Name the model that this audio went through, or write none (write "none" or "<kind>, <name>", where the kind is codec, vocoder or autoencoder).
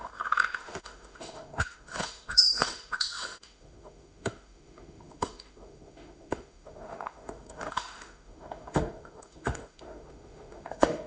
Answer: autoencoder, DAC-VAE